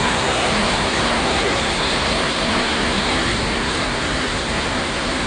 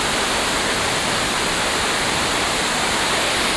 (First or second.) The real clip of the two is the second